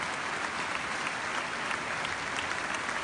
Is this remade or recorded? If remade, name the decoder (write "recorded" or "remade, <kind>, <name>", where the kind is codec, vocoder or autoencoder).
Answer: recorded